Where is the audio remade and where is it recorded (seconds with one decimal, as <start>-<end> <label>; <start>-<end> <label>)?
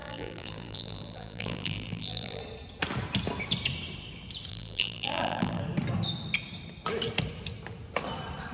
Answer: 0.0-2.4 remade; 2.4-4.5 recorded; 4.5-5.6 remade; 5.6-8.5 recorded